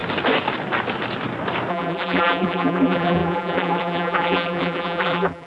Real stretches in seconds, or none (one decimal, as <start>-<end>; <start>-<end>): 0.0-1.7